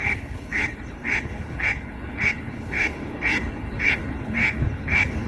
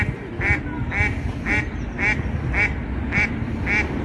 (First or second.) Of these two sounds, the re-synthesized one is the first